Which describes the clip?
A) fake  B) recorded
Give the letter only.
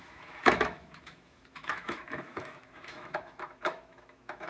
A